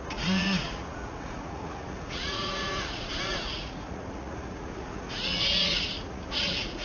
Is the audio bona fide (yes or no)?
no